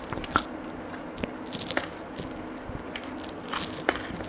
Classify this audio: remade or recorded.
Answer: recorded